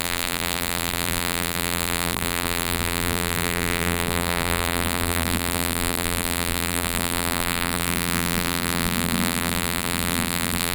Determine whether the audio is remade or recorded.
remade